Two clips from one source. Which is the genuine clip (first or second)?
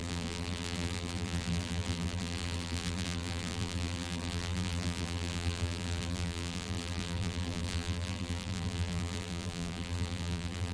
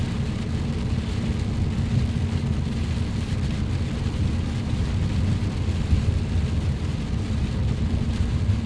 second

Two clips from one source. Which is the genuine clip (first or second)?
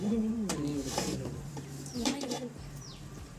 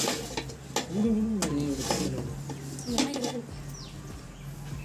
second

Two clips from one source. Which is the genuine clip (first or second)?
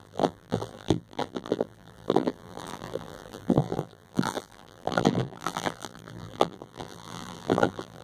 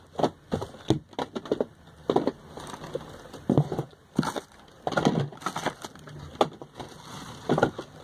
second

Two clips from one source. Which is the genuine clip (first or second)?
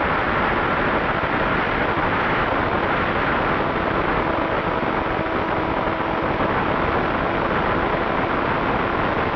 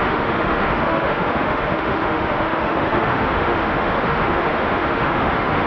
first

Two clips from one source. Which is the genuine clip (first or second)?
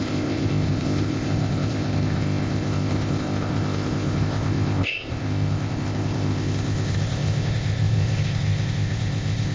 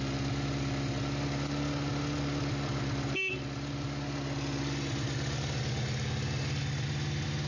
second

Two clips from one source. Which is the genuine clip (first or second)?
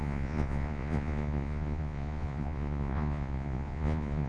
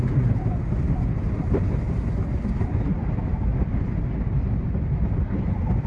second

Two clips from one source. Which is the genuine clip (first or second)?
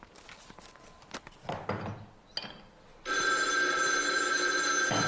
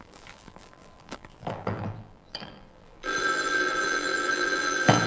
first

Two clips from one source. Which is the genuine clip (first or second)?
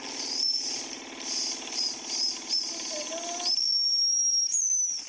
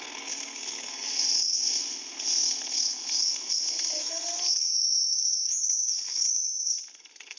first